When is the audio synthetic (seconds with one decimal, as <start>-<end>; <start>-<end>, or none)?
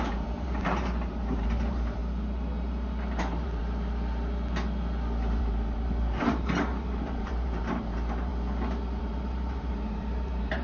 0.0-2.0; 3.2-3.6; 5.4-8.3; 9.0-10.6